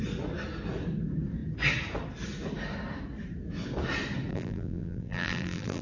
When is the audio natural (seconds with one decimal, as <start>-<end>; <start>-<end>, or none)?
0.0-4.3